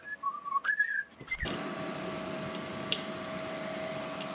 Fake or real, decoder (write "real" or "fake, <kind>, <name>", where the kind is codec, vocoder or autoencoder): real